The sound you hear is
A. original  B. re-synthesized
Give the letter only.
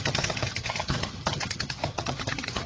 B